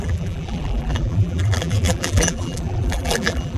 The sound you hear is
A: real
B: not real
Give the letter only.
B